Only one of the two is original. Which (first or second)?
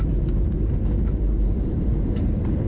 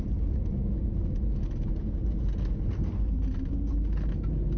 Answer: second